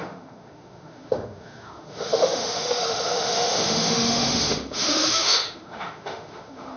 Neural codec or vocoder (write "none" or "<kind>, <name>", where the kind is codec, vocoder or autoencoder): autoencoder, DAC-VAE